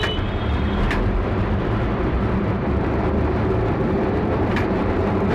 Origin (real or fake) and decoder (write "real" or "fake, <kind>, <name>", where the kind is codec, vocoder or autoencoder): fake, vocoder, BigVGAN v2